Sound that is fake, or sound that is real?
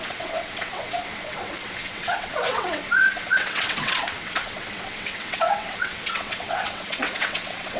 fake